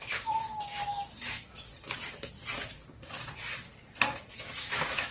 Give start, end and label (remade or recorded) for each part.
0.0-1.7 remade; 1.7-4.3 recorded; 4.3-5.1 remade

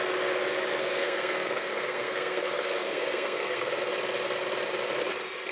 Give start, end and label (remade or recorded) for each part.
0.0-0.8 recorded; 0.8-3.8 remade; 3.8-5.5 recorded

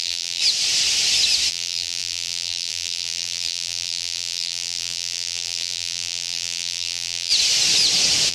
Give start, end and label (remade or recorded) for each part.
0.0-0.4 remade; 0.4-1.5 recorded; 1.5-7.3 remade; 7.3-8.3 recorded

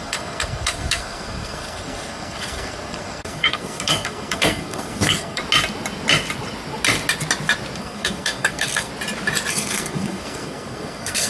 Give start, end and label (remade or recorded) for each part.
0.0-5.4 remade; 5.4-7.8 recorded; 7.8-8.9 remade; 8.9-9.5 recorded; 9.5-11.3 remade

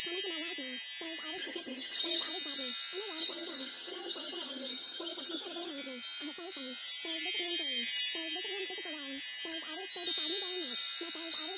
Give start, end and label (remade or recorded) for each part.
0.0-1.4 recorded; 1.4-2.3 remade; 2.3-3.2 recorded; 3.2-5.7 remade; 5.7-11.6 recorded

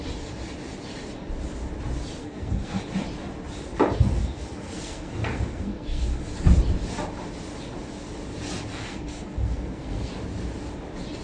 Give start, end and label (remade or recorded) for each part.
0.0-2.2 recorded; 2.2-2.8 remade; 2.8-4.2 recorded; 4.2-6.3 remade; 6.3-8.7 recorded; 8.7-10.1 remade; 10.1-11.2 recorded